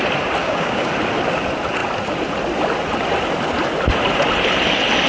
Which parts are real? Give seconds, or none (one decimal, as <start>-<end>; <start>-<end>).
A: 0.0-0.4; 0.9-5.1